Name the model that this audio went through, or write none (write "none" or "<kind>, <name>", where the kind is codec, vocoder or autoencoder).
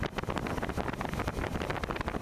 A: none